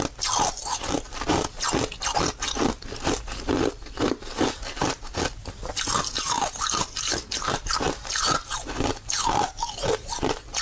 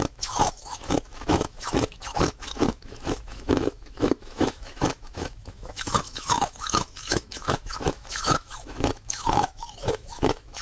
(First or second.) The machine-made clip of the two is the second